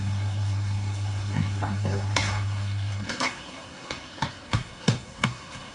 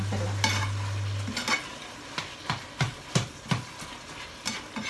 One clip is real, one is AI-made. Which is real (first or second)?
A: second